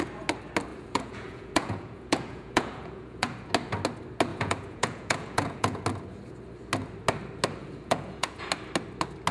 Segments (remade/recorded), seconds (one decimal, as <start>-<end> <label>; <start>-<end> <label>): 0.0-0.7 recorded; 0.7-3.5 remade; 3.5-4.3 recorded; 4.3-5.8 remade; 5.8-7.6 recorded; 7.6-8.5 remade; 8.5-9.3 recorded